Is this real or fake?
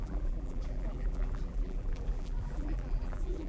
fake